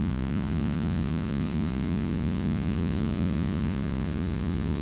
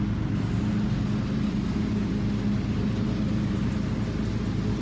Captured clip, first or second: second